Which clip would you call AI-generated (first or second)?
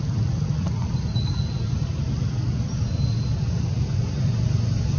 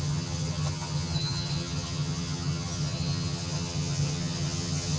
second